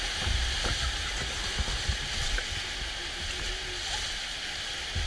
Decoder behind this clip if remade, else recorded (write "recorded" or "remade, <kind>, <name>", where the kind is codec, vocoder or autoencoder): recorded